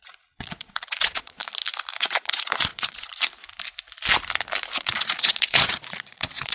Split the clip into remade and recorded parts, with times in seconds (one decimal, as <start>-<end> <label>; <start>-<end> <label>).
0.0-1.4 remade; 1.4-2.0 recorded; 2.0-3.1 remade; 3.1-4.8 recorded; 4.8-6.5 remade